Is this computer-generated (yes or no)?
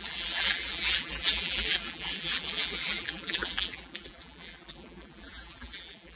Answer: yes